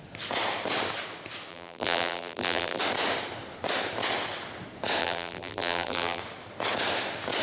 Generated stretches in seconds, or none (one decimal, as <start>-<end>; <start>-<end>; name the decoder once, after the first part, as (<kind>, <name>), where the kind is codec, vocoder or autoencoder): 1.5-2.8 (vocoder, BigVGAN v2); 5.0-6.2